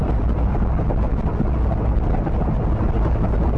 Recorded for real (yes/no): yes